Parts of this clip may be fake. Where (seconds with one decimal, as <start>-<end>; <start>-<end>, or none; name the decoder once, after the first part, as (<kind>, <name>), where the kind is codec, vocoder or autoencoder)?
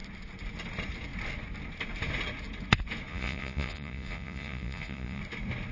3.1-5.2 (vocoder, Vocos)